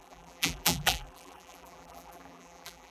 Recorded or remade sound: remade